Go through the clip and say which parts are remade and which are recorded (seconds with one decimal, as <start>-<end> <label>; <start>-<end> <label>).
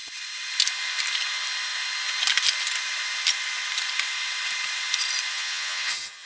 0.0-5.3 recorded; 5.3-6.3 remade